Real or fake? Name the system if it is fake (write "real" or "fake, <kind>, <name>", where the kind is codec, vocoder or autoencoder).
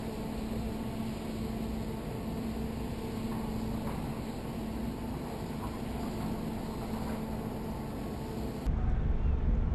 real